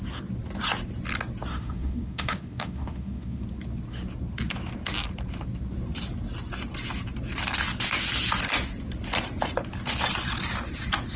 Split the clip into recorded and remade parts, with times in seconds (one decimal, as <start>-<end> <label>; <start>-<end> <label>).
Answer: 0.0-1.5 recorded; 1.5-3.4 remade; 3.4-11.2 recorded